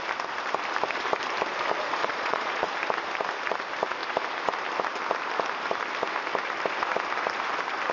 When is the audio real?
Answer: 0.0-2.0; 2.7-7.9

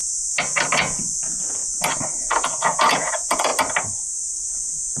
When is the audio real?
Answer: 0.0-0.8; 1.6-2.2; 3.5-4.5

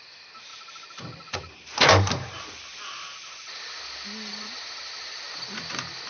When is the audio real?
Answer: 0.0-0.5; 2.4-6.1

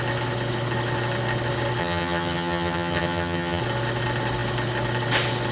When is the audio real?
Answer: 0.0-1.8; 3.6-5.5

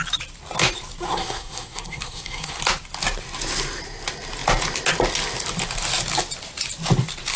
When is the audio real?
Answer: 0.0-1.1; 2.6-7.4